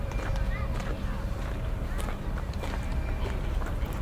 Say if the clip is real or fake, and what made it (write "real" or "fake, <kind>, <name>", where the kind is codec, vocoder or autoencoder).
real